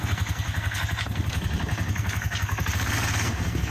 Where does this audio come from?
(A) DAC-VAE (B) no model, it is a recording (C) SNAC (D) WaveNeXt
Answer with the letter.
C